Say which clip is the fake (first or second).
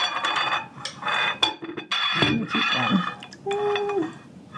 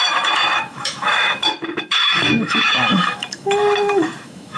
second